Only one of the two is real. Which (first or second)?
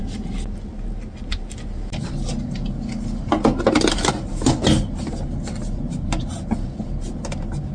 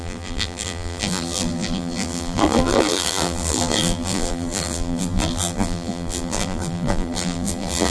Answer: first